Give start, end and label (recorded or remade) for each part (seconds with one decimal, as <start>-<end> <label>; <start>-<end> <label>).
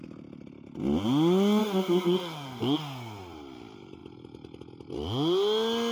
0.0-1.6 recorded; 1.6-2.6 remade; 2.6-5.9 recorded